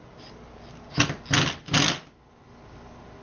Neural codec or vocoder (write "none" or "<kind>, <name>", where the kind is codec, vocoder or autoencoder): none